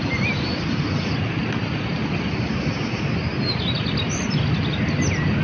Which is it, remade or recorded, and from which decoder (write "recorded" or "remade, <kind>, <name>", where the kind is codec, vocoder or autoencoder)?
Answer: recorded